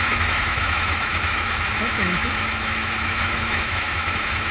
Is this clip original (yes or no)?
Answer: no